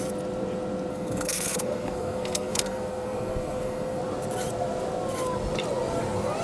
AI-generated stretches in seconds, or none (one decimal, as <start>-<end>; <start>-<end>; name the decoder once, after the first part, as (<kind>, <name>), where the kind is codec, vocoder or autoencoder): 0.9-4.0 (codec, SNAC)